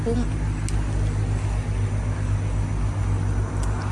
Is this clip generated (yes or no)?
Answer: no